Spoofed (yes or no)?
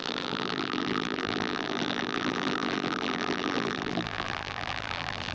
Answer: yes